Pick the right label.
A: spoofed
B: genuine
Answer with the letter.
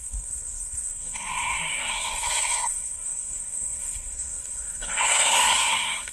A